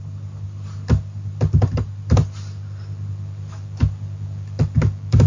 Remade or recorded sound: recorded